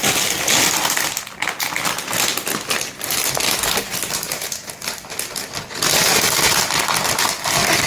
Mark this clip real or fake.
real